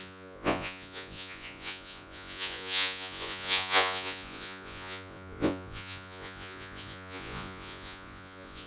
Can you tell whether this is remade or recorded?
remade